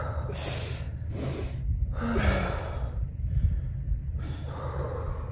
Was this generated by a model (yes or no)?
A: no